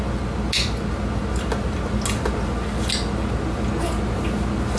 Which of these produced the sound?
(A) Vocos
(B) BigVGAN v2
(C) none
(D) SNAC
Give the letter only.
C